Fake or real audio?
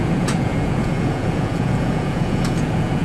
fake